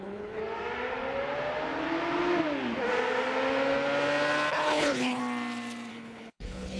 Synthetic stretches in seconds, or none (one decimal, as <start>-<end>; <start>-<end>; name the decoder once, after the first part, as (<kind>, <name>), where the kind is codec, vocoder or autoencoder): 0.0-0.4 (codec, HILCodec); 4.5-5.2; 5.9-6.8